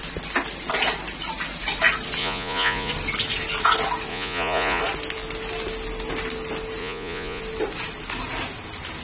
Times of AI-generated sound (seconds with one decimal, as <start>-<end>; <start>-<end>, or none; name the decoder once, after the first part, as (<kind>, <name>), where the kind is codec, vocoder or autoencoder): 2.2-2.9 (vocoder, Vocos); 4.1-4.8; 6.8-7.4